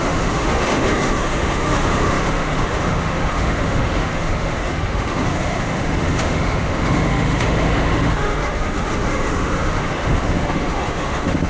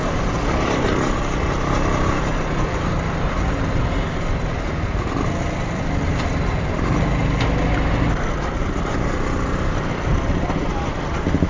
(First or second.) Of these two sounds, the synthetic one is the first